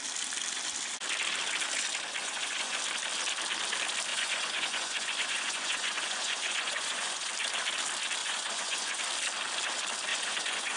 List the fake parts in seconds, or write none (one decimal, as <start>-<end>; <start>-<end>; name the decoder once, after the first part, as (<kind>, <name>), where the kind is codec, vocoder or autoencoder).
2.2-2.8 (vocoder, Vocos); 4.1-7.3; 8.2-9.0; 10.1-10.8